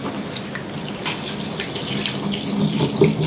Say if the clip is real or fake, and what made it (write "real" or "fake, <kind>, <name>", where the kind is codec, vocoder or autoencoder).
real